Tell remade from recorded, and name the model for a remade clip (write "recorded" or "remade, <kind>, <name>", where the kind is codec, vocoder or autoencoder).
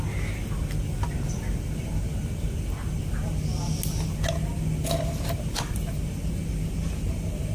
recorded